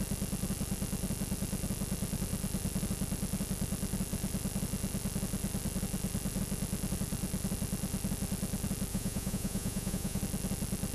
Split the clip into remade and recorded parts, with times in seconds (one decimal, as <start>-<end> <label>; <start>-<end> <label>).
0.0-8.9 recorded; 8.9-10.2 remade; 10.2-10.9 recorded